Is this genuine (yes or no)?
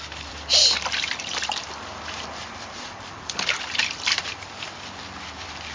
no